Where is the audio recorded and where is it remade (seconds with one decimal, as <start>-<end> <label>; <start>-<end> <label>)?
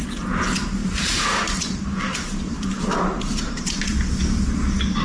0.0-0.8 recorded; 0.8-3.8 remade; 3.8-5.0 recorded